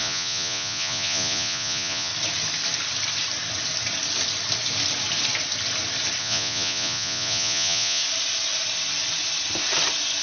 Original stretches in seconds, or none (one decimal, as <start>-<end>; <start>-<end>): 2.1-6.2; 8.0-10.2